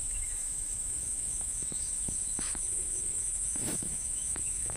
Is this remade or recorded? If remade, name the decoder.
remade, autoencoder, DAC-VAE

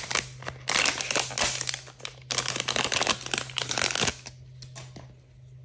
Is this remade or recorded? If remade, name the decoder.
recorded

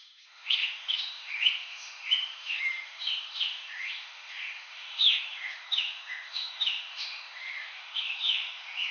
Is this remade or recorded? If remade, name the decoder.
remade, autoencoder, DAC-VAE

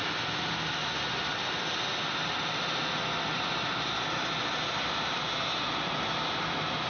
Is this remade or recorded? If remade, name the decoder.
recorded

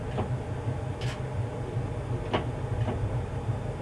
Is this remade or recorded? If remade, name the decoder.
recorded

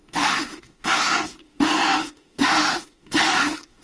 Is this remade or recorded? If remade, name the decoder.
remade, autoencoder, DAC-VAE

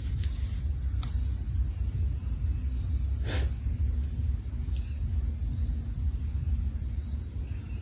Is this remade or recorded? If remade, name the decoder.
recorded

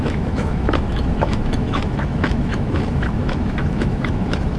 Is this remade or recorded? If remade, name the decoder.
remade, autoencoder, DAC-VAE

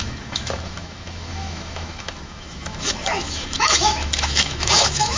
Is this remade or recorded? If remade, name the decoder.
remade, autoencoder, DAC-VAE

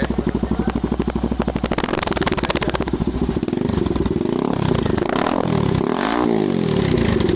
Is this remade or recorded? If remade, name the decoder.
recorded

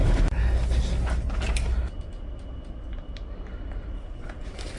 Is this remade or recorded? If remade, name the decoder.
recorded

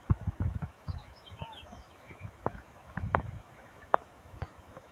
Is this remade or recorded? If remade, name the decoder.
remade, autoencoder, DAC-VAE